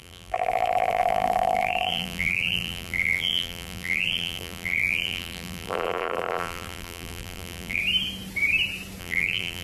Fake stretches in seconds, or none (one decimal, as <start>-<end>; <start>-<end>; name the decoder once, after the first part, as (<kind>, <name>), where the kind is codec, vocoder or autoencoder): 0.0-7.8 (vocoder, BigVGAN v2); 9.0-9.6